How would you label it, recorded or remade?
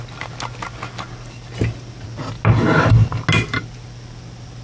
recorded